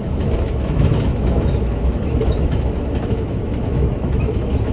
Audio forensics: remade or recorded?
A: remade